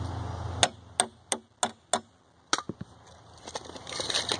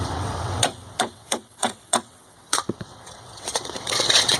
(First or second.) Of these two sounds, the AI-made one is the second